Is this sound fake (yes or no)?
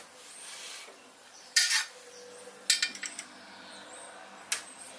no